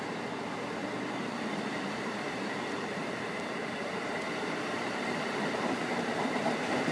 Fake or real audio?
fake